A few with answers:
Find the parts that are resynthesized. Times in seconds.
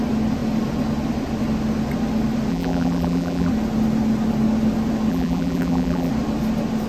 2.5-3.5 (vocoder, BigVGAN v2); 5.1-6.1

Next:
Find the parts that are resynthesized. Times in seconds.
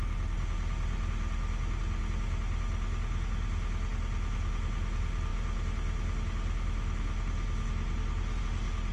none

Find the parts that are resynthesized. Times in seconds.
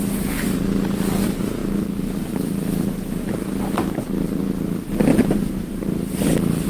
5.1-6.7 (vocoder, BigVGAN v2)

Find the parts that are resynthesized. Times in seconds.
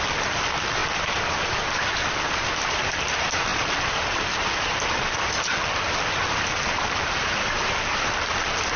0.0-0.8 (vocoder, BigVGAN v2); 2.8-8.8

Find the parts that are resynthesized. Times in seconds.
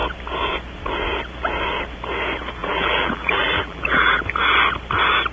2.6-4.2 (vocoder, BigVGAN v2)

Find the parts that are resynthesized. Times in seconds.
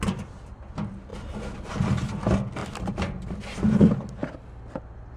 2.6-3.6 (vocoder, BigVGAN v2)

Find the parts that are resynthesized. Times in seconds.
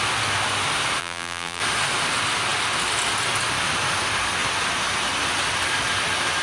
1.0-1.6 (vocoder, BigVGAN v2)